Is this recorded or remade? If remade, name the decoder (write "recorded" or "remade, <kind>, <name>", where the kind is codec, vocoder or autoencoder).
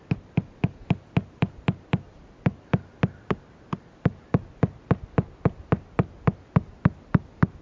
recorded